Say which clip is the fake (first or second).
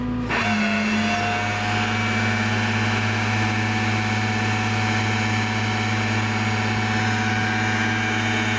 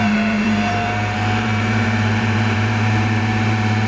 second